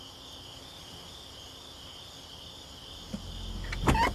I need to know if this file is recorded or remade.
recorded